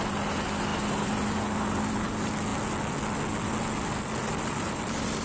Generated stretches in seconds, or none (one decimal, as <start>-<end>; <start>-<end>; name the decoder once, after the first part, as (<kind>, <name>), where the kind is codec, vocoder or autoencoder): none